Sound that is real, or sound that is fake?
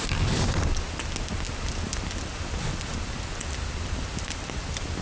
real